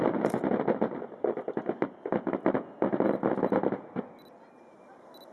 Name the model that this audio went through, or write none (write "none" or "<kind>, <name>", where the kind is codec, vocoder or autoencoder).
none